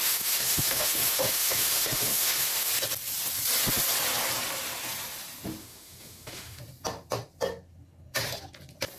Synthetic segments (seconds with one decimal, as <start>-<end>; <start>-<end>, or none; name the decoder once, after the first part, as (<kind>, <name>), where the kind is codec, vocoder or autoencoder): 0.0-2.7 (autoencoder, DAC-VAE); 5.6-6.6